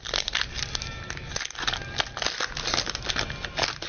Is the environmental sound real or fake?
real